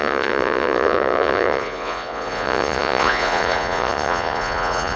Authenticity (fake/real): fake